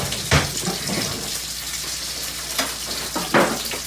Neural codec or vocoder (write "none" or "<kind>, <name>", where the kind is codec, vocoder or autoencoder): none